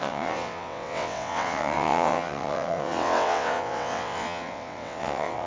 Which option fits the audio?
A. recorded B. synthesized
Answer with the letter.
B